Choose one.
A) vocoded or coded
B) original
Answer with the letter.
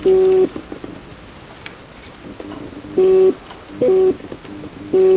B